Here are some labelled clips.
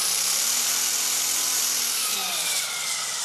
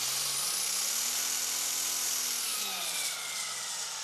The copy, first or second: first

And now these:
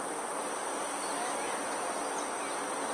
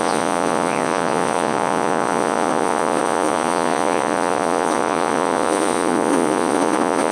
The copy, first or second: second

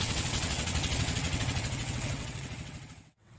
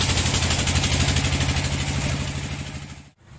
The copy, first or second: first